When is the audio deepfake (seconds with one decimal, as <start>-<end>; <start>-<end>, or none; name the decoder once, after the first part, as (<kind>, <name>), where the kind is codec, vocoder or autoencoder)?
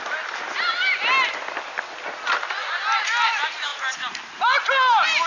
none